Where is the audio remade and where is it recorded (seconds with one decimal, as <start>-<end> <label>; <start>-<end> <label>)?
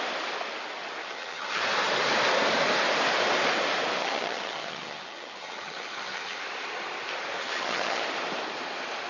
0.0-1.0 recorded; 1.0-1.6 remade; 1.6-4.0 recorded; 4.0-6.4 remade; 6.4-7.4 recorded; 7.4-8.0 remade; 8.0-9.1 recorded